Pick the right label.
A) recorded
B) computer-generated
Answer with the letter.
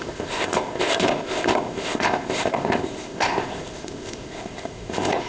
B